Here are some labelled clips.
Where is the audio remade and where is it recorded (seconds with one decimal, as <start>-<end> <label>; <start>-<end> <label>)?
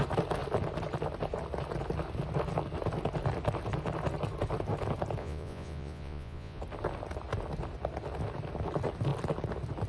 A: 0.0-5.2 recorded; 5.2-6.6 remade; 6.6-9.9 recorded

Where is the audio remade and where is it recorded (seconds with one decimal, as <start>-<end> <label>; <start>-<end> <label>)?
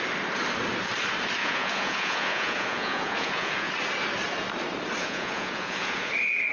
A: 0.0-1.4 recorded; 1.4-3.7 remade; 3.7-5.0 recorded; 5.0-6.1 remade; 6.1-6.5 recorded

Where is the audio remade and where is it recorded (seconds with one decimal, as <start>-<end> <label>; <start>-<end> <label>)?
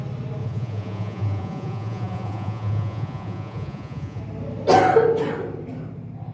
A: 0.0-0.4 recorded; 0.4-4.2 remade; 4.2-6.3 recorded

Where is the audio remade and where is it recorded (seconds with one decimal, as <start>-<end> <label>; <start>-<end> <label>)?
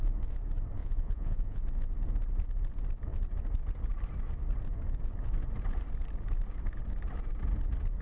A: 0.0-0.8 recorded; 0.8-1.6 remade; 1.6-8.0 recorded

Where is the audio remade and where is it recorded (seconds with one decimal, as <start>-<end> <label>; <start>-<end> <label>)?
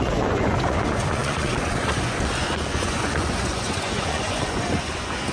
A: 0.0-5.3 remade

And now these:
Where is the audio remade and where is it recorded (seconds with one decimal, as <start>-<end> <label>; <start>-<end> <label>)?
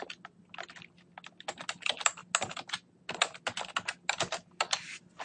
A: 0.0-5.2 recorded